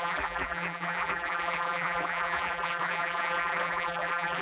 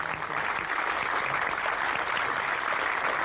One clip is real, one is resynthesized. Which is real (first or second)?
second